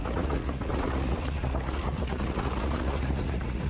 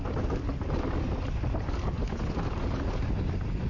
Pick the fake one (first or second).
first